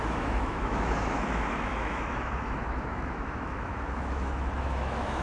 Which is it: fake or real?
fake